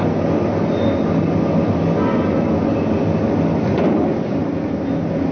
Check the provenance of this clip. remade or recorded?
recorded